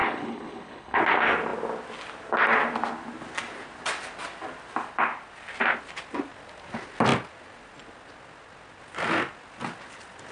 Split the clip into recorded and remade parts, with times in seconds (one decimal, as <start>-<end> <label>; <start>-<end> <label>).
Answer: 0.0-1.0 remade; 1.0-10.3 recorded